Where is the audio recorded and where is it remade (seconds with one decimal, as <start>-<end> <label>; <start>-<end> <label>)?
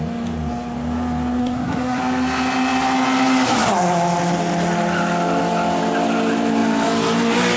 0.0-1.4 recorded; 1.4-2.0 remade; 2.0-7.6 recorded